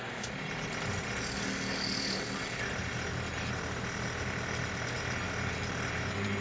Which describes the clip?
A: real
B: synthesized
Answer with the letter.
A